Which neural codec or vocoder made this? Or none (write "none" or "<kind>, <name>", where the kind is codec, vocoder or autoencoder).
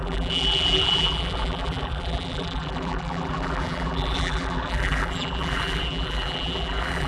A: vocoder, BigVGAN v2